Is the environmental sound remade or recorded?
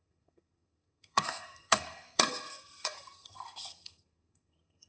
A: remade